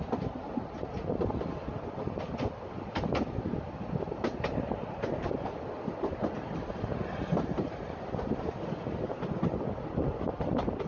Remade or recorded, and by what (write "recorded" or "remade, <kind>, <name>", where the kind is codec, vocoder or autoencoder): recorded